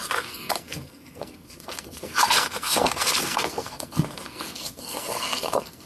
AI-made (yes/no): yes